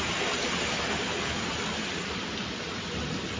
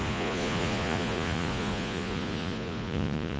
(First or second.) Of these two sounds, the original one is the first